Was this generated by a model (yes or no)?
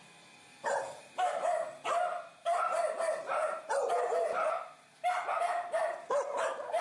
yes